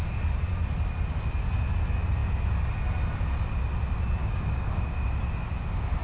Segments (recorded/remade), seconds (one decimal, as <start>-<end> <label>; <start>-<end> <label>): 0.0-4.2 recorded; 4.2-4.8 remade; 4.8-6.0 recorded